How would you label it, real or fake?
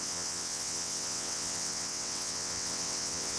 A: fake